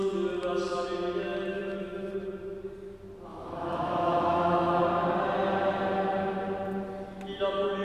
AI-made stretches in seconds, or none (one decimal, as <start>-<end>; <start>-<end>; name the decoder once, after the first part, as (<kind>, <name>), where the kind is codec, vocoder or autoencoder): 1.5-2.1 (autoencoder, DAC-VAE); 3.3-4.8